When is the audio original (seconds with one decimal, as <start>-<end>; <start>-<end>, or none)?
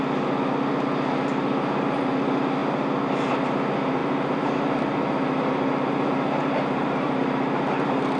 0.0-4.0; 5.0-6.4; 7.2-8.2